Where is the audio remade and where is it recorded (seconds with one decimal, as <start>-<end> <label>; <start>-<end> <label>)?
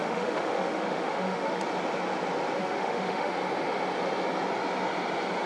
0.0-1.6 remade; 1.6-2.6 recorded; 2.6-3.3 remade; 3.3-5.5 recorded